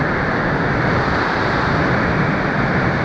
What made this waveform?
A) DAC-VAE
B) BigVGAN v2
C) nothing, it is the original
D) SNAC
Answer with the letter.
B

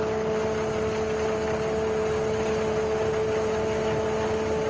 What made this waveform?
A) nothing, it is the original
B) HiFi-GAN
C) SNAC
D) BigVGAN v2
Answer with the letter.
A